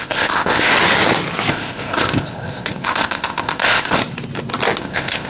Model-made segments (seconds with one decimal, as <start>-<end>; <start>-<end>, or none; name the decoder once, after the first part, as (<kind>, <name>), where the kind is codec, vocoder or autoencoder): 0.0-0.7 (codec, ZipCodec); 1.5-4.0; 4.8-5.3